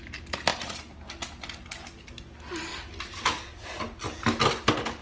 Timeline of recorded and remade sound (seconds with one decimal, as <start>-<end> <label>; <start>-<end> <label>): 0.0-5.0 recorded